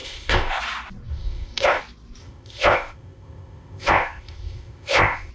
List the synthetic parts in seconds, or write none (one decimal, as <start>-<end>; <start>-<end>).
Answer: 0.0-0.6; 1.1-1.8; 2.2-5.3